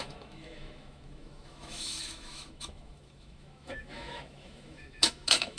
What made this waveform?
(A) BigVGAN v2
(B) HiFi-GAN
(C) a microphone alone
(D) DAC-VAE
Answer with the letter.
D